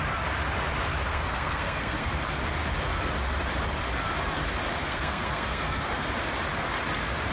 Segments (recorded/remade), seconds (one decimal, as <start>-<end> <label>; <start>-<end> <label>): 0.0-1.1 recorded; 1.1-2.1 remade; 2.1-4.8 recorded; 4.8-6.0 remade; 6.0-7.3 recorded